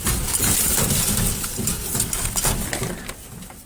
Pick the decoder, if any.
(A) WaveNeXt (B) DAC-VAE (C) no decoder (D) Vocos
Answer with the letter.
C